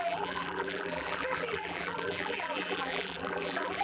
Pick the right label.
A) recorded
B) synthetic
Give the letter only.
B